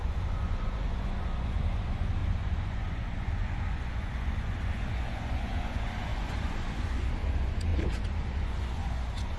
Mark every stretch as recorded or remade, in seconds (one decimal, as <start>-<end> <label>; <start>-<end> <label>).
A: 0.0-9.4 remade